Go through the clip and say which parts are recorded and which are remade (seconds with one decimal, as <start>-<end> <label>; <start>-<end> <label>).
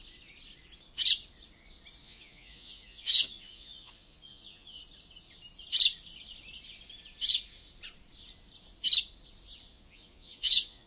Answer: 0.0-2.0 recorded; 2.0-4.8 remade; 4.8-9.7 recorded; 9.7-10.9 remade